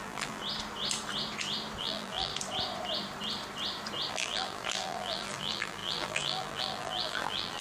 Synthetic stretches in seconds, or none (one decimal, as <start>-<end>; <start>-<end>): 0.0-0.4; 1.8-2.3; 4.1-7.6